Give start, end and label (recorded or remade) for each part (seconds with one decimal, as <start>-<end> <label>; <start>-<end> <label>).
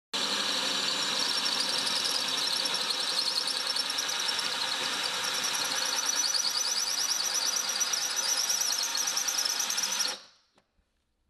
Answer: 0.0-1.2 recorded; 1.2-6.4 remade; 6.4-8.9 recorded; 8.9-9.8 remade; 9.8-11.3 recorded